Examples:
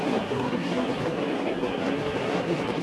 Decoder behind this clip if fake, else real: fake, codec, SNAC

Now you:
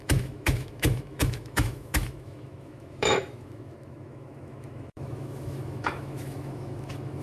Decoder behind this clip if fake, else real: fake, autoencoder, DAC-VAE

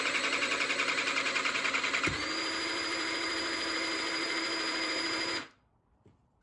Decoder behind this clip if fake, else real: fake, vocoder, BigVGAN v2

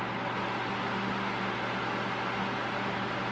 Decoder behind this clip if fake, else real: real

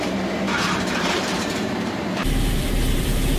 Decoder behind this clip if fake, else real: fake, vocoder, BigVGAN v2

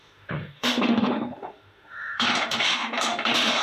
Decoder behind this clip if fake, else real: fake, autoencoder, DAC-VAE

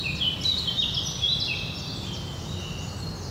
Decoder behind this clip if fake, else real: real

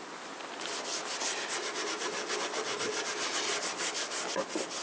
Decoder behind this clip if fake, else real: real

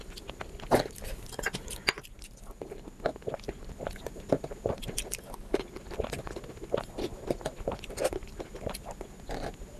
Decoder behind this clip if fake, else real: real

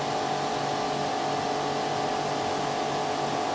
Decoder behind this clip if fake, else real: real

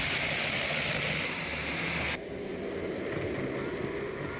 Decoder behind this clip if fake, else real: real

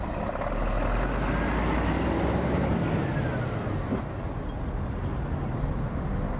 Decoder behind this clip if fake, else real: real